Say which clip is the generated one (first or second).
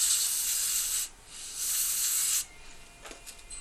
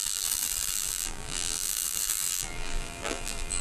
second